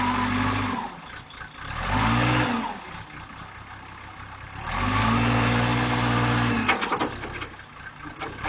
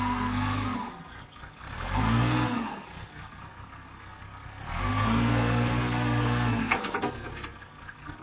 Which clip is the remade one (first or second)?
second